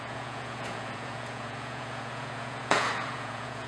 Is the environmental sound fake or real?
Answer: fake